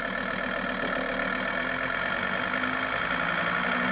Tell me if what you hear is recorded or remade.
recorded